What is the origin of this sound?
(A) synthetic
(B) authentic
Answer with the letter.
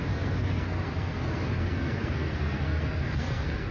A